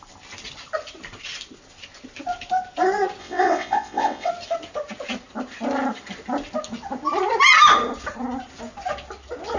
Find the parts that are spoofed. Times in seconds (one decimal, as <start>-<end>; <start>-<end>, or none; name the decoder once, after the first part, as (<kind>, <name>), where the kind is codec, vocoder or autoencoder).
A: 3.2-4.3 (vocoder, WaveNeXt)